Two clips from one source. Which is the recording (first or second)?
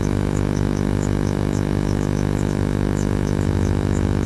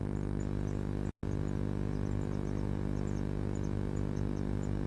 second